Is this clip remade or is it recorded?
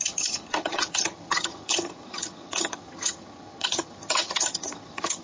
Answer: remade